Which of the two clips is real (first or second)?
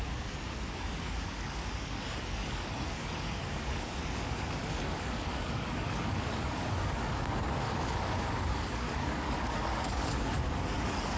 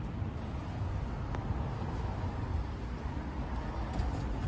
second